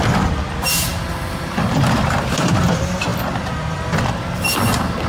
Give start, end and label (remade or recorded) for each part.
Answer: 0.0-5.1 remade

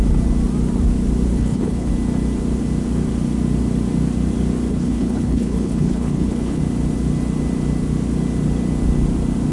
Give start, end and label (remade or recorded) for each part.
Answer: 0.0-1.3 recorded; 1.3-1.9 remade; 1.9-4.7 recorded; 4.7-6.6 remade; 6.6-9.5 recorded

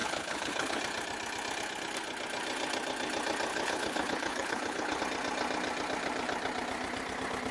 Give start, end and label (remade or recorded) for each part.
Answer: 0.0-0.8 remade; 0.8-3.5 recorded; 3.5-5.0 remade; 5.0-7.5 recorded

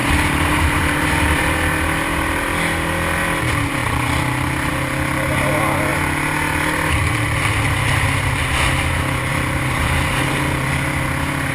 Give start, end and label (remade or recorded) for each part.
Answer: 0.0-1.5 remade; 1.5-3.8 recorded; 3.8-4.7 remade; 4.7-9.3 recorded; 9.3-10.2 remade; 10.2-11.5 recorded

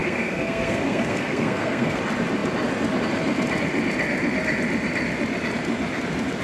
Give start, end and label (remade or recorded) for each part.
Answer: 0.0-2.0 remade; 2.0-6.4 recorded

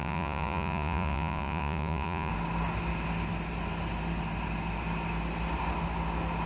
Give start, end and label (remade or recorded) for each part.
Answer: 0.0-2.3 remade; 2.3-6.5 recorded

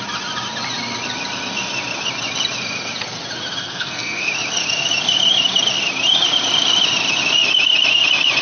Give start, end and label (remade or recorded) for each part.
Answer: 0.0-3.6 recorded; 3.6-4.3 remade; 4.3-8.4 recorded